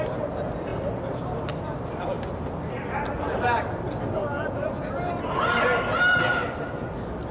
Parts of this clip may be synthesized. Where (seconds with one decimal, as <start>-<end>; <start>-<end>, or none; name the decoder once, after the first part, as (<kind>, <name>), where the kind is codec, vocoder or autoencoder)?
none

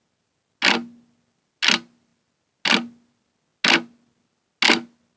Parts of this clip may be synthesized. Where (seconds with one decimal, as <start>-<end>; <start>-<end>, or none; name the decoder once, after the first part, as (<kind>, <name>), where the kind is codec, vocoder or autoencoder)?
none

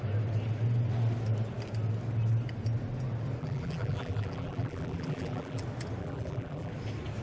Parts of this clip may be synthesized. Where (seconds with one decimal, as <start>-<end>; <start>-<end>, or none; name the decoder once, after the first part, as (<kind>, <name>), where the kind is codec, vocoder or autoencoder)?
3.4-5.6 (vocoder, BigVGAN v2); 6.0-6.7

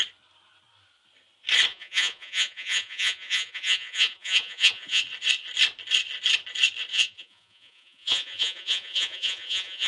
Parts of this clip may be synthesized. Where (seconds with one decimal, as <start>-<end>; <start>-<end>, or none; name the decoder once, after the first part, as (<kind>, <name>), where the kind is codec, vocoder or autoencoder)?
1.7-5.0 (vocoder, Vocos); 6.9-9.9

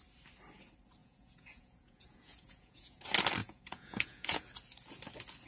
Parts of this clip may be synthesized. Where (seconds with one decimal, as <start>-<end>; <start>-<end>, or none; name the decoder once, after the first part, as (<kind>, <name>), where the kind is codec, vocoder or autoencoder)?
1.0-3.0 (vocoder, Vocos); 3.4-4.4

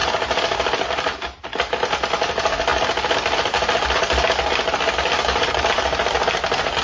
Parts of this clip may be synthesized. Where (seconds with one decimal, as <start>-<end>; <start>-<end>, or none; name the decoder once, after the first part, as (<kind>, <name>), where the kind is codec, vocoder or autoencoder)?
none

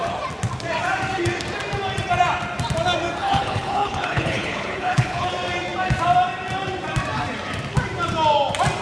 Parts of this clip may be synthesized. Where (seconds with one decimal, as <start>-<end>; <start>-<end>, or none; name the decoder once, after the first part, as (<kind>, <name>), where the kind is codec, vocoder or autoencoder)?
3.2-5.3 (codec, HILCodec)

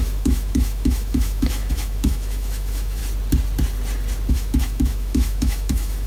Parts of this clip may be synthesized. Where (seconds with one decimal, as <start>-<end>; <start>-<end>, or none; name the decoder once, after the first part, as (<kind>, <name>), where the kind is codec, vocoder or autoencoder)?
0.0-3.0 (autoencoder, DAC-VAE); 4.3-6.1